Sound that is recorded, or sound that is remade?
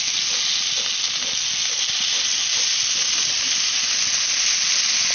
recorded